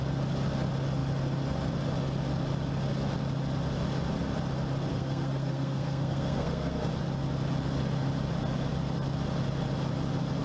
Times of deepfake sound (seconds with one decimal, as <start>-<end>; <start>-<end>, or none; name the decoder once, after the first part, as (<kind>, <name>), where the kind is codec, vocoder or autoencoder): 4.9-6.9 (codec, SNAC)